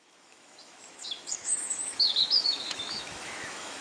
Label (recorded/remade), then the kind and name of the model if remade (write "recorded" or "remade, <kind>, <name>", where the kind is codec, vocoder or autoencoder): remade, autoencoder, DAC-VAE